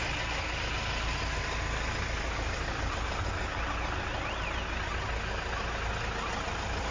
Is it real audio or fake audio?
real